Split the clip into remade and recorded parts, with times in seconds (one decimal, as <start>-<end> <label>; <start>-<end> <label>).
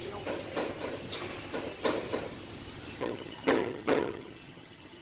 0.0-3.0 recorded; 3.0-5.0 remade